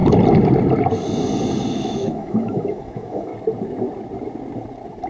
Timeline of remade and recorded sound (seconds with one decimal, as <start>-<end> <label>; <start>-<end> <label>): 0.0-1.7 recorded; 1.7-3.3 remade; 3.3-5.1 recorded